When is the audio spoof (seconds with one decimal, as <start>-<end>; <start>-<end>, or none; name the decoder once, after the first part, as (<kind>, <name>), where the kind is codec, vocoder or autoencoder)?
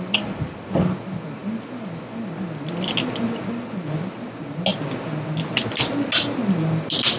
none